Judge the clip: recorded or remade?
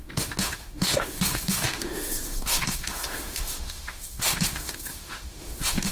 remade